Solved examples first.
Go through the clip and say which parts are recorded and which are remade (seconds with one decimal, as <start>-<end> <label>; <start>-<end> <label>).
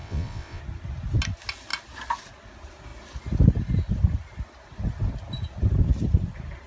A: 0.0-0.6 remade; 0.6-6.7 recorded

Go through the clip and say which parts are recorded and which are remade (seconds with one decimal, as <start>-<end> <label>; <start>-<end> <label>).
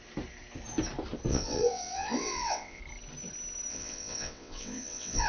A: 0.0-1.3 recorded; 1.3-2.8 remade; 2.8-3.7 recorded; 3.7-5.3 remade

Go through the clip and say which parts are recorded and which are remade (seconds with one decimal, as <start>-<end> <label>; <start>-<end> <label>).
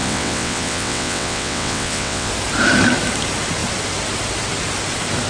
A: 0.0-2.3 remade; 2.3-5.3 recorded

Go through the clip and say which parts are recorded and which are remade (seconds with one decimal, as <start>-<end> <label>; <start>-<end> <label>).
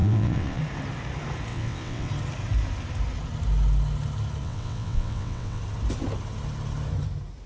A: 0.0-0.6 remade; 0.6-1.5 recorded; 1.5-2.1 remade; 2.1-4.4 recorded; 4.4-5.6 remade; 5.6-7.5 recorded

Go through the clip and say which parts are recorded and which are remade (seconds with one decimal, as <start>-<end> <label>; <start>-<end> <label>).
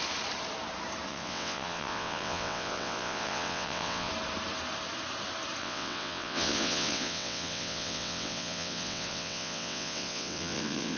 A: 0.0-1.1 recorded; 1.1-4.1 remade; 4.1-5.6 recorded; 5.6-11.0 remade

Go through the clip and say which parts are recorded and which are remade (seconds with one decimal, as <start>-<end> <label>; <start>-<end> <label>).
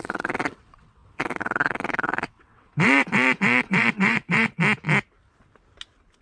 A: 0.0-4.6 remade; 4.6-6.2 recorded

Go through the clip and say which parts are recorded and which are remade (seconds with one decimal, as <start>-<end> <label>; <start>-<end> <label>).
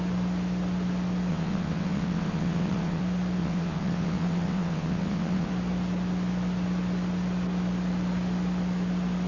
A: 0.0-1.3 recorded; 1.3-3.0 remade; 3.0-3.4 recorded; 3.4-5.5 remade; 5.5-9.3 recorded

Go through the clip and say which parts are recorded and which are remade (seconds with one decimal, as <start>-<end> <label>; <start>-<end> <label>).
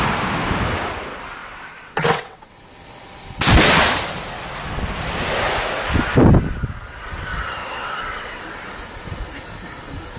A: 0.0-1.4 recorded; 1.4-2.5 remade; 2.5-7.6 recorded; 7.6-8.4 remade; 8.4-10.2 recorded